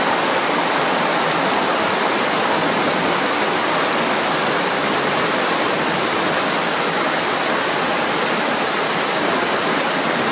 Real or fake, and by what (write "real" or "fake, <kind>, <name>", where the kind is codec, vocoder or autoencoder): fake, vocoder, BigVGAN v2